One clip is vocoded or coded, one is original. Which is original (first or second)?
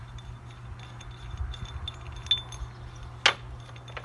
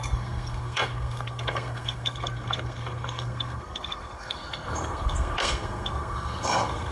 first